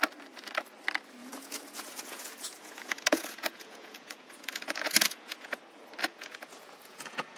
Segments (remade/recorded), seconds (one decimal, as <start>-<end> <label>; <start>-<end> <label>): 0.0-1.2 recorded; 1.2-5.6 remade; 5.6-6.0 recorded; 6.0-7.4 remade